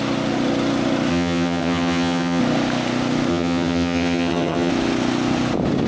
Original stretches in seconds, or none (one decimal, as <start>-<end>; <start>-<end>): 0.0-1.1; 2.4-3.3; 4.7-5.9